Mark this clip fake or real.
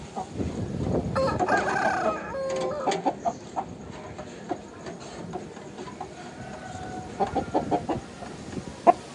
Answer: real